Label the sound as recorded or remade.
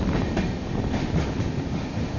recorded